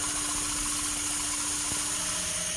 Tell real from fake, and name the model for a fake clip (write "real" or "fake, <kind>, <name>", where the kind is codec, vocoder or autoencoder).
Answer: real